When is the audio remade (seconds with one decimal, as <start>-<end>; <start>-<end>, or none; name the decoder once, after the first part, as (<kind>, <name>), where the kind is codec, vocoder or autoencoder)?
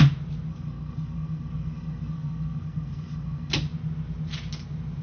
0.5-3.5 (codec, SNAC)